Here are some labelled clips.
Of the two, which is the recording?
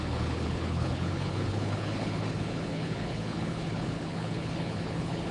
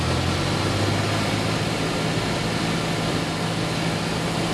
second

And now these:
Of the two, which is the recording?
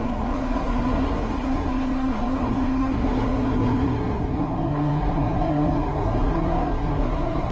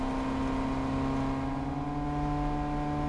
second